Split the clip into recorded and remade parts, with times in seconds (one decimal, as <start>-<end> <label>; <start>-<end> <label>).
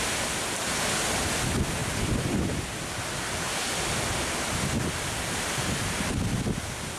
0.0-1.8 recorded; 1.8-6.0 remade; 6.0-7.0 recorded